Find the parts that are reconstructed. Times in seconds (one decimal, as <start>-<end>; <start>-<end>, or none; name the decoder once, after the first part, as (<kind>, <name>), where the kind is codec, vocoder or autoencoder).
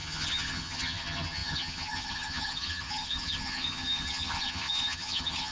0.0-5.5 (vocoder, HiFi-GAN)